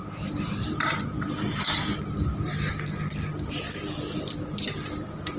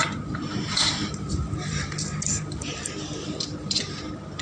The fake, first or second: second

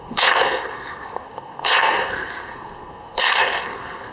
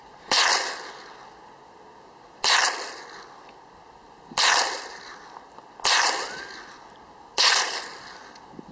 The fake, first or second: first